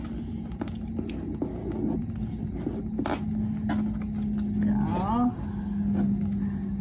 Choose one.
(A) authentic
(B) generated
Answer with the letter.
A